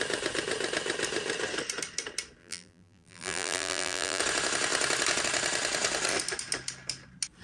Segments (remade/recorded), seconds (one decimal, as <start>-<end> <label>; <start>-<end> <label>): 0.0-2.4 recorded; 2.4-4.2 remade; 4.2-7.4 recorded